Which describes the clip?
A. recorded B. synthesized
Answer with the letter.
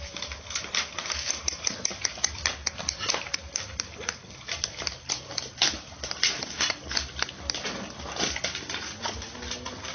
A